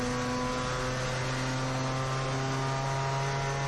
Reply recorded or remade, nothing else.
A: recorded